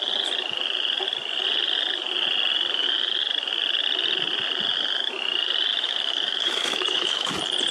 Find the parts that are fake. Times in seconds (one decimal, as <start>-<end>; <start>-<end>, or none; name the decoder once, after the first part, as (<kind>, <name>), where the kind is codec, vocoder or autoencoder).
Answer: 5.7-7.3 (autoencoder, DAC-VAE)